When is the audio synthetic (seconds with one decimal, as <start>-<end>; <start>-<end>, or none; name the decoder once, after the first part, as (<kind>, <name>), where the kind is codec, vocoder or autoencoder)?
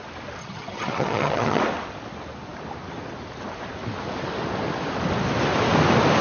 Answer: 0.4-1.6 (vocoder, HiFi-GAN)